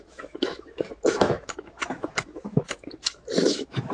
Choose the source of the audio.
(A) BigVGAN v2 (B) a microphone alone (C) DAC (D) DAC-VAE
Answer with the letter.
D